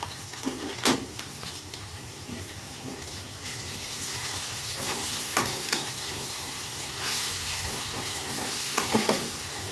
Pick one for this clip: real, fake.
fake